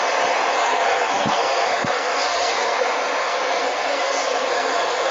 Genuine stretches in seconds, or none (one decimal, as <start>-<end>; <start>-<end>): 0.0-0.5; 2.8-3.2